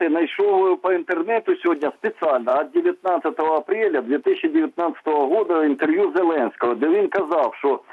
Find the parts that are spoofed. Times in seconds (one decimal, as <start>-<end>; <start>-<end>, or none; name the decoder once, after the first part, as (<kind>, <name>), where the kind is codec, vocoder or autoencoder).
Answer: none